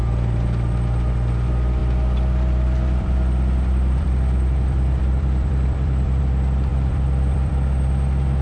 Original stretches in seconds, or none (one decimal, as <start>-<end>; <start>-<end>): 0.0-1.8; 6.2-6.7; 7.5-8.4